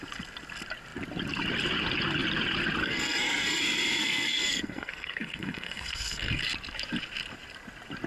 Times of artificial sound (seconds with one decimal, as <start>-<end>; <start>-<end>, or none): 2.8-3.6; 4.0-6.4

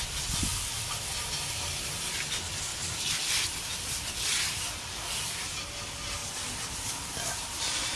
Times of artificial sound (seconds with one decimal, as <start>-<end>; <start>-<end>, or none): none

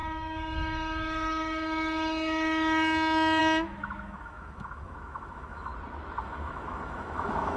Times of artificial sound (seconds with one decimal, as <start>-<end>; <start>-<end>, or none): 0.0-5.7; 6.2-7.6

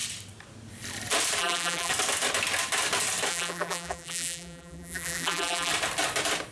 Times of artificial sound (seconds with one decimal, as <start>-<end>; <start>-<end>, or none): 1.4-1.9; 3.3-5.7

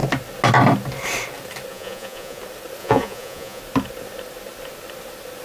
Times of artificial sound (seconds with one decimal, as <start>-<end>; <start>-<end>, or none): 1.7-2.4; 2.8-3.6